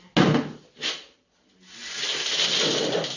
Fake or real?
real